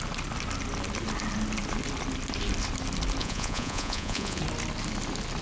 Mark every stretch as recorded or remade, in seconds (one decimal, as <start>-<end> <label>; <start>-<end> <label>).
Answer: 0.0-3.2 recorded; 3.2-4.4 remade; 4.4-5.4 recorded